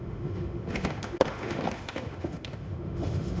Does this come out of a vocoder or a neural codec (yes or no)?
yes